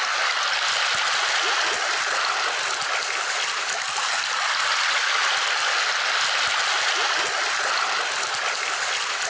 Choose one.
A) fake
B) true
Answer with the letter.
B